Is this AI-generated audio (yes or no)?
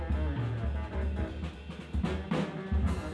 no